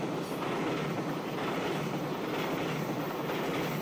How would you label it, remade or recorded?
recorded